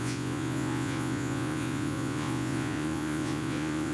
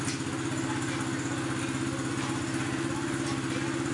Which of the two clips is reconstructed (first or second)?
first